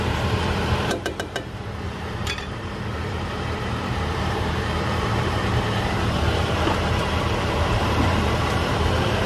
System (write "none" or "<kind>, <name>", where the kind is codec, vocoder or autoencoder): vocoder, BigVGAN v2